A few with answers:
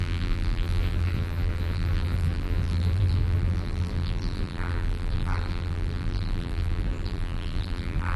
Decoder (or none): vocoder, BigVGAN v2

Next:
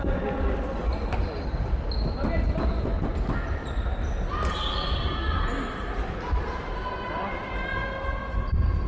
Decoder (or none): none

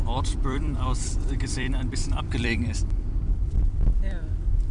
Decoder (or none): vocoder, BigVGAN v2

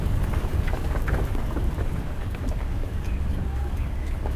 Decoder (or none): codec, DAC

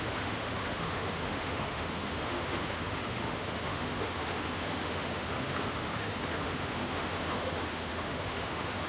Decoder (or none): autoencoder, DAC-VAE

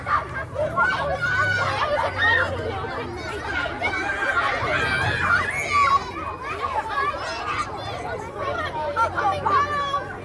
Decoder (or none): none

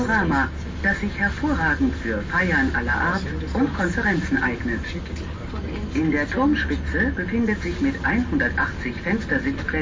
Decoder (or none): none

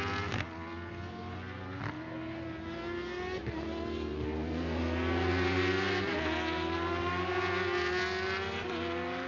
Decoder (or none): none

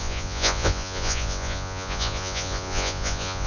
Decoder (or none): vocoder, Vocos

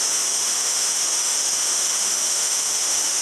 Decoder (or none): autoencoder, DAC-VAE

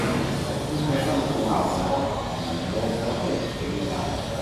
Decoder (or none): none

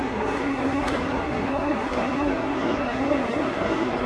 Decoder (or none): codec, SNAC